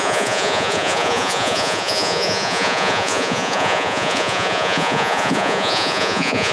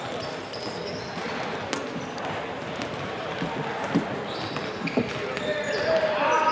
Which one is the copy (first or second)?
first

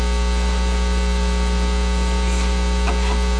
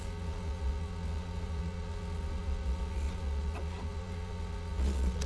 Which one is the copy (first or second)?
second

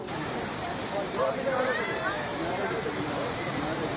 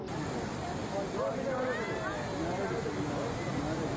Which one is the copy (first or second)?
first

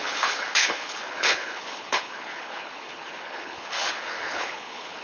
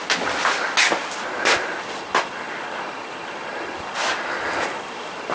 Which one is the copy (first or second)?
first